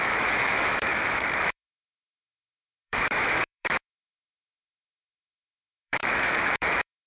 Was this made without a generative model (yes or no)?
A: no